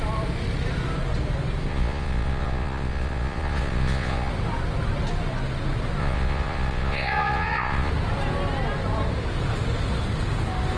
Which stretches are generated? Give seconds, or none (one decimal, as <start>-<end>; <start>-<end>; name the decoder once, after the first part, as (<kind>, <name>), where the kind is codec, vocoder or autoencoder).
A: 1.7-4.3 (vocoder, Vocos); 6.0-7.9